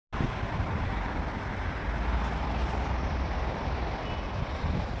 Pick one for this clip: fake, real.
real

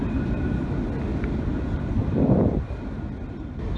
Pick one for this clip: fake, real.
real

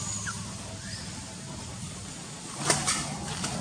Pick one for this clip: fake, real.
real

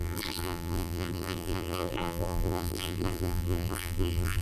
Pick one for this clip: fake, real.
fake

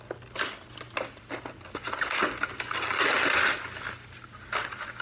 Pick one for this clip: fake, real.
real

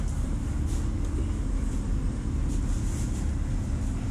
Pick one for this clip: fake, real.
real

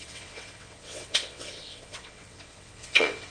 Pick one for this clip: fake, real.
fake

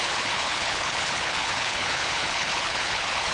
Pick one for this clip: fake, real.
fake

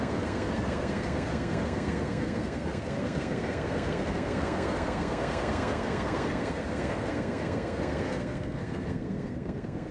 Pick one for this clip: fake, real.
fake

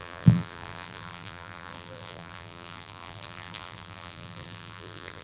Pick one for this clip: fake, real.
fake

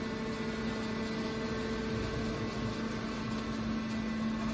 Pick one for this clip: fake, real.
real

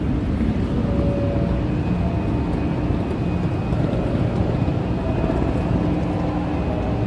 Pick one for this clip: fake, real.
real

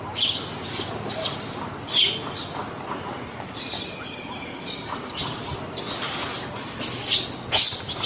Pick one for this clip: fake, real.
real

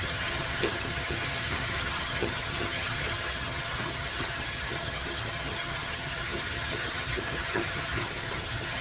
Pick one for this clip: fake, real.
fake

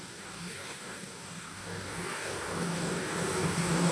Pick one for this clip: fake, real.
fake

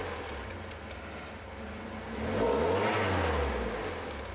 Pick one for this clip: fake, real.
real